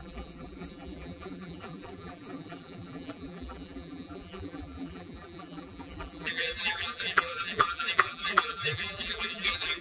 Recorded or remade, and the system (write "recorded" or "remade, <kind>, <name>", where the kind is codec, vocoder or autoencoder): remade, vocoder, BigVGAN v2